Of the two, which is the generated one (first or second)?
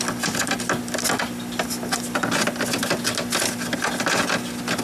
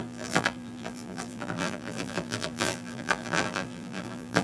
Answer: second